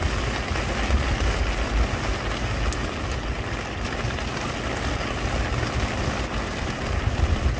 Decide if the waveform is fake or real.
real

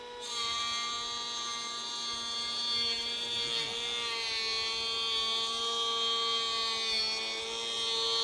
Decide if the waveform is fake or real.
real